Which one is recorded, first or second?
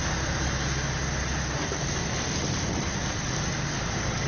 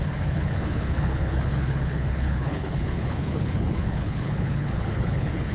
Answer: first